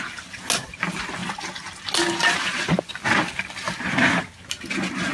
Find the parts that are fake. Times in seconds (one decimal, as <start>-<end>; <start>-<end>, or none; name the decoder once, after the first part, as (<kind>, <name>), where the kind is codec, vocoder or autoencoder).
none